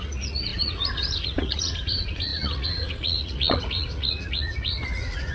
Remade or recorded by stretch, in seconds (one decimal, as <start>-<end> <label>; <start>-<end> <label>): 0.0-5.3 remade